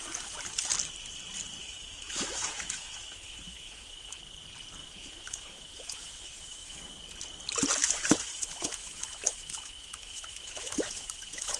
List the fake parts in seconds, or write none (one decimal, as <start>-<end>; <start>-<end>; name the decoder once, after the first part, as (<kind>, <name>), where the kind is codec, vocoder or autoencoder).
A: 1.6-4.2 (autoencoder, DAC-VAE); 4.8-6.8; 7.8-11.6